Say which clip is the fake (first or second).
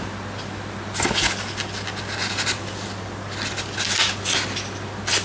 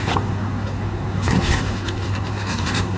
second